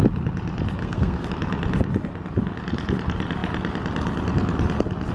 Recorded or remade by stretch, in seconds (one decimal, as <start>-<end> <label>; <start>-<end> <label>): 0.0-0.8 recorded; 0.8-1.3 remade; 1.3-5.1 recorded